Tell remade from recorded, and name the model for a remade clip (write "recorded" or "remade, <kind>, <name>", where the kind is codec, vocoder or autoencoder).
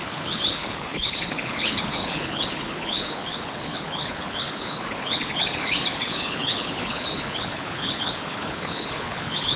remade, codec, HILCodec